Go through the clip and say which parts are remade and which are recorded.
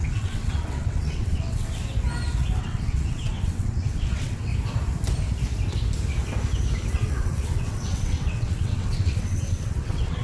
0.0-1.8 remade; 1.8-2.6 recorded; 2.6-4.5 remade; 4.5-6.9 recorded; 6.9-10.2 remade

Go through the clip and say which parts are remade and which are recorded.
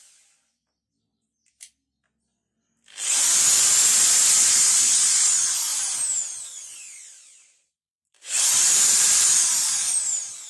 0.0-5.7 recorded; 5.7-10.5 remade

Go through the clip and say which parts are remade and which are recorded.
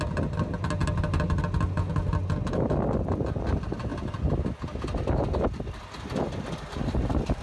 0.0-7.4 recorded